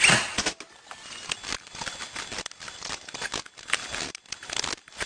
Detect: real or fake real